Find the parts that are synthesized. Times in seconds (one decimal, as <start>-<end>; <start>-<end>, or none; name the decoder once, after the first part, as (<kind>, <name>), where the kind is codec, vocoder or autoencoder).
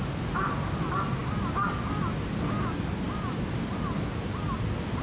none